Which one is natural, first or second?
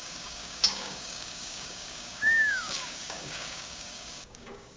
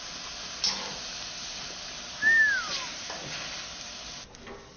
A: second